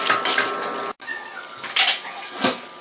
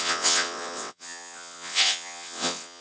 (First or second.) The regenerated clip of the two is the second